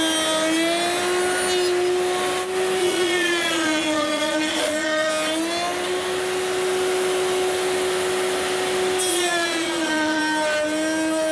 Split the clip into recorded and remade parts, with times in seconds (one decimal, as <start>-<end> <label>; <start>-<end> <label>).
0.0-2.8 recorded; 2.8-5.1 remade; 5.1-9.1 recorded; 9.1-10.2 remade; 10.2-11.3 recorded